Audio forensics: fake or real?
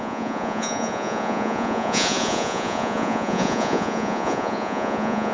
fake